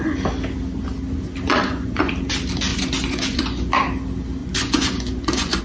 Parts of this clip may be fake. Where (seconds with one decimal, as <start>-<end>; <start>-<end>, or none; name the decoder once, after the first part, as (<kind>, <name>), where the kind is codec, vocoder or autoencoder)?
1.5-2.1 (vocoder, Vocos); 2.7-3.7; 4.4-5.6